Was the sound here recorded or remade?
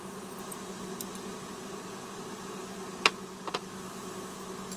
recorded